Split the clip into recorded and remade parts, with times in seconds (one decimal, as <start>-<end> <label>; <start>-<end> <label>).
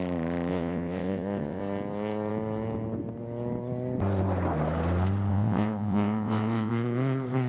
0.0-0.5 recorded; 0.5-1.6 remade; 1.6-5.3 recorded; 5.3-6.7 remade; 6.7-7.5 recorded